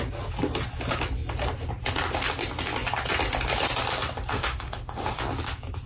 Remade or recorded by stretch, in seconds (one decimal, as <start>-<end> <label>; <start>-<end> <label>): 0.0-4.3 recorded; 4.3-5.2 remade; 5.2-5.9 recorded